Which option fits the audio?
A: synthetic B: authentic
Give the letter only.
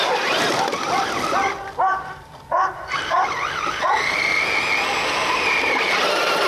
B